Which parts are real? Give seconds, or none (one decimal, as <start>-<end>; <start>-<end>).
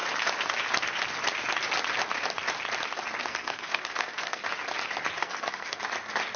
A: 0.0-3.2; 4.4-5.2; 5.8-6.4